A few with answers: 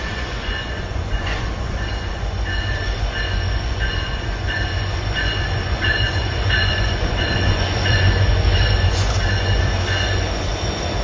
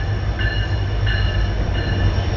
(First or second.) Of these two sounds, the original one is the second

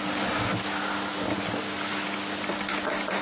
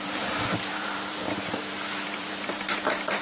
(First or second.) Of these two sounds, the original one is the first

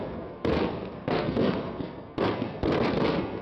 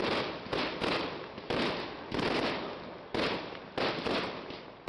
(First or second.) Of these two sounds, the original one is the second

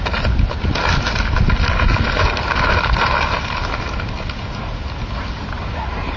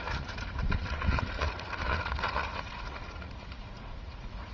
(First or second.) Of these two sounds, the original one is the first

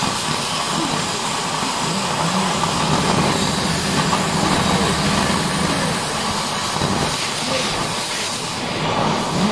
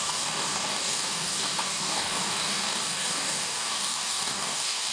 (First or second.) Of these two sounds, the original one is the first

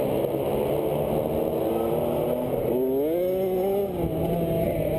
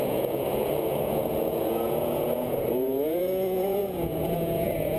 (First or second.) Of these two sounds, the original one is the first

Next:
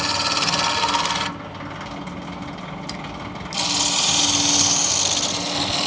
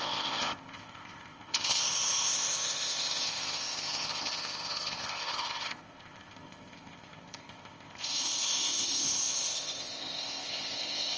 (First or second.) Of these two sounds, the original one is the first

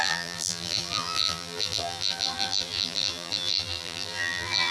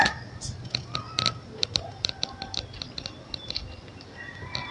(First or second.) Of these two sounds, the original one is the second